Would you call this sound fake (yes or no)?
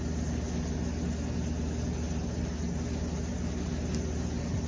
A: no